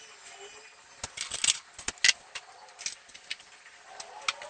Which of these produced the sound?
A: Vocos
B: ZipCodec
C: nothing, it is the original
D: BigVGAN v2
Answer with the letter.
C